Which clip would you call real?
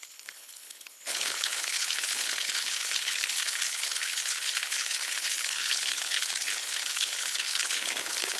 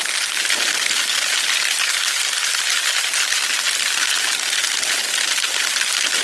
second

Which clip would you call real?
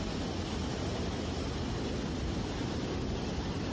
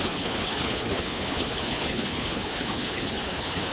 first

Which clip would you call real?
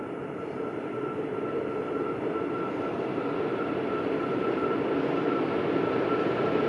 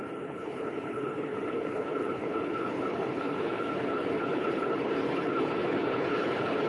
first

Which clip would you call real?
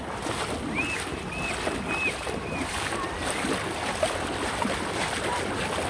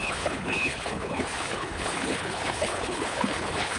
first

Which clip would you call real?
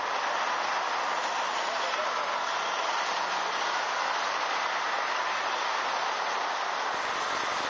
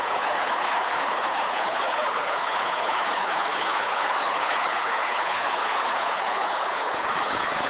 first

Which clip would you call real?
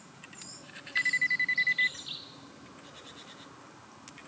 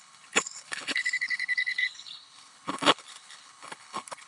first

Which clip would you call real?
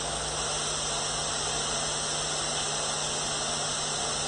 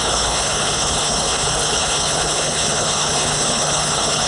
first